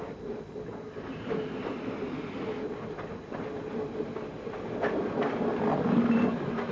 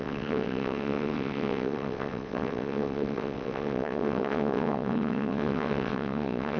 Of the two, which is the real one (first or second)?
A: first